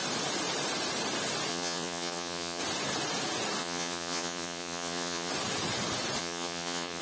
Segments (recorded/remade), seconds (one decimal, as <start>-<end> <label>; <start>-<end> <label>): 0.0-1.5 recorded; 1.5-2.6 remade; 2.6-3.6 recorded; 3.6-5.3 remade; 5.3-6.2 recorded; 6.2-7.0 remade